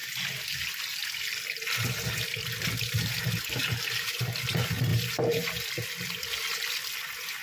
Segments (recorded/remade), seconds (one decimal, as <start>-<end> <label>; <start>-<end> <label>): 0.0-0.6 remade; 0.6-3.6 recorded; 3.6-4.1 remade; 4.1-4.9 recorded; 4.9-5.7 remade; 5.7-7.4 recorded